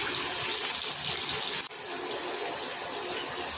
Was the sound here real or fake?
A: real